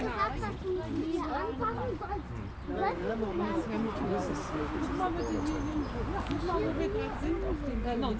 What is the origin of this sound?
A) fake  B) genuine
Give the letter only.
B